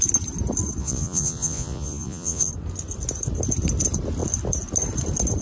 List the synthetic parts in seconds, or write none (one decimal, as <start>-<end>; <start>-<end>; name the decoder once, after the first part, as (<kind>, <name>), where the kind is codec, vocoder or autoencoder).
0.8-2.5 (vocoder, Vocos)